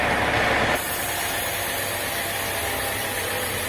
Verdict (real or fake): real